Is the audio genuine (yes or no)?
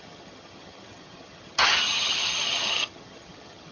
no